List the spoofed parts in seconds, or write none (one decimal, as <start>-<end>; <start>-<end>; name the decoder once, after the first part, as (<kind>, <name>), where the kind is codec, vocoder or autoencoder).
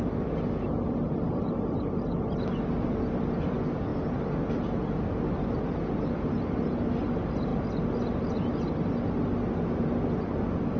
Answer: none